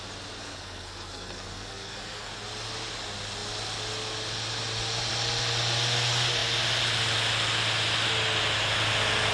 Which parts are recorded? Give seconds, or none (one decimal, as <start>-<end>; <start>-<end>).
0.0-0.4; 2.3-9.3